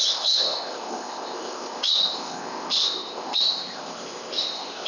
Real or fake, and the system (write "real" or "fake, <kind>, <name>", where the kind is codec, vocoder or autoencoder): fake, codec, ZipCodec